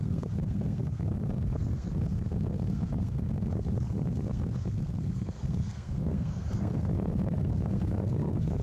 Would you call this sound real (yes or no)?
no